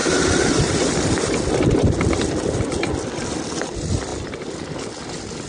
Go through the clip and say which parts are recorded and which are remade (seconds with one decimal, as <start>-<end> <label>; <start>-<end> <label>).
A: 0.0-1.0 remade; 1.0-5.5 recorded